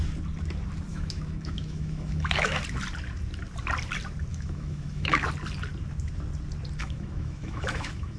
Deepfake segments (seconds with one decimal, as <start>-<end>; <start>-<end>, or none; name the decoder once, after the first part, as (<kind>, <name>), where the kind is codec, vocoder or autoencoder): 0.9-2.6 (autoencoder, DAC-VAE); 4.3-5.3; 6.8-8.2

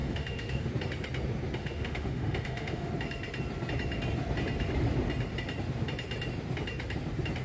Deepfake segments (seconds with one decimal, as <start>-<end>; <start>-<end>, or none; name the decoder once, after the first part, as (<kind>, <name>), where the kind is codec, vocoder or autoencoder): 0.0-0.7 (autoencoder, DAC-VAE); 1.6-2.9

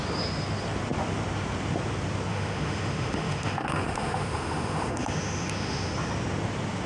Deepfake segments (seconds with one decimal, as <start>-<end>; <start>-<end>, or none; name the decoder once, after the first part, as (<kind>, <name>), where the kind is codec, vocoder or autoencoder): 2.3-5.9 (autoencoder, DAC-VAE)

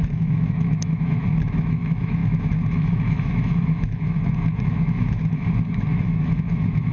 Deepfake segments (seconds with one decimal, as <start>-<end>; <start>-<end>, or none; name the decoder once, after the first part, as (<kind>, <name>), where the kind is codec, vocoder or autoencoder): 0.0-6.9 (autoencoder, DAC-VAE)

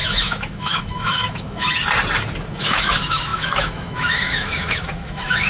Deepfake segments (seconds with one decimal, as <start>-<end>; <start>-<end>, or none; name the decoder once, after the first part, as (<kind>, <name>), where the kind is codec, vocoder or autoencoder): 0.0-1.7 (autoencoder, DAC-VAE); 2.6-5.5

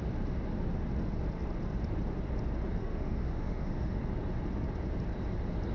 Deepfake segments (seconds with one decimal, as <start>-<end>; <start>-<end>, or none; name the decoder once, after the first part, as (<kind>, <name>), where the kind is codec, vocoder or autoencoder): 2.8-4.0 (autoencoder, DAC-VAE)

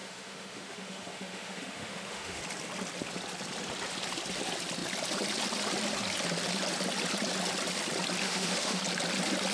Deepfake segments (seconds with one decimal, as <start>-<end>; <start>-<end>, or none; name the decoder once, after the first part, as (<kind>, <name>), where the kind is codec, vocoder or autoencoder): 0.0-2.4 (autoencoder, DAC-VAE); 8.2-8.8

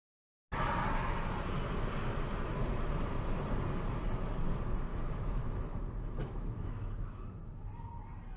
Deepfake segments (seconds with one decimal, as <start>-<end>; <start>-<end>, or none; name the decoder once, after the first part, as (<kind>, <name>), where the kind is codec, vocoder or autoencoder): 4.9-5.8 (autoencoder, DAC-VAE); 6.2-7.2